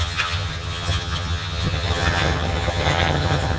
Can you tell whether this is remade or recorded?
remade